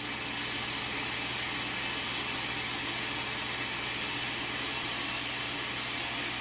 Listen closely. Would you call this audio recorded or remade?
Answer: recorded